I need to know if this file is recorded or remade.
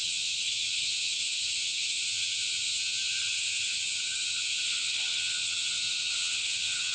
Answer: remade